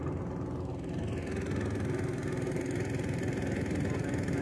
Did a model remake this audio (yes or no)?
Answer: no